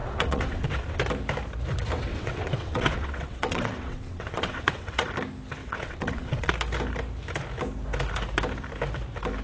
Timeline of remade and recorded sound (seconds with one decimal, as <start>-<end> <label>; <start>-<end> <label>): 0.0-1.0 remade; 1.0-2.1 recorded; 2.1-5.1 remade; 5.1-5.6 recorded; 5.6-6.5 remade; 6.5-9.4 recorded